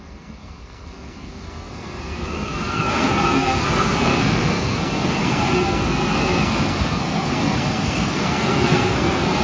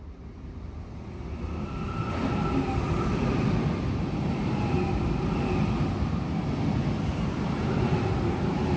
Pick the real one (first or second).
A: second